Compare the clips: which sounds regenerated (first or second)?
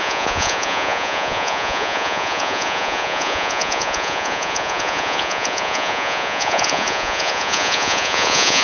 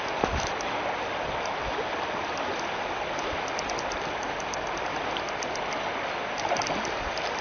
first